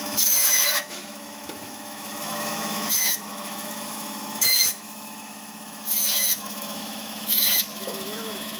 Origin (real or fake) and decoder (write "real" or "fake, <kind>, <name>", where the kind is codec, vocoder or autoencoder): fake, autoencoder, DAC-VAE